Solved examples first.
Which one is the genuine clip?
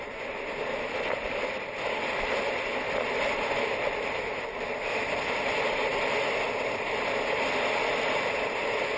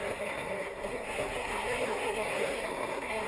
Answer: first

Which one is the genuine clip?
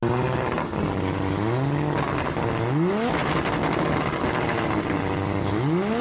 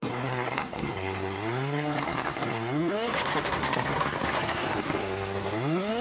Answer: first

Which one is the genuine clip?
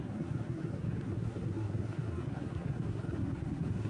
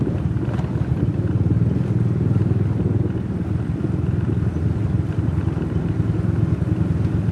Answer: second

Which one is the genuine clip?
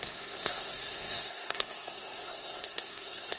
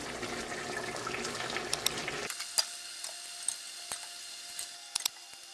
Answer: second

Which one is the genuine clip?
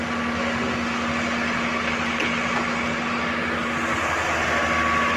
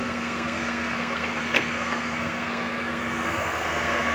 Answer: first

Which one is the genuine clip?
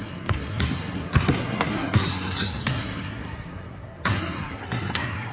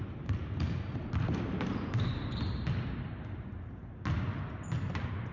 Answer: second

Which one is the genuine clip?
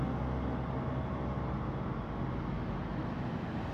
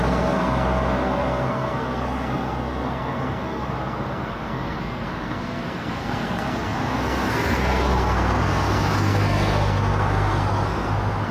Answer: first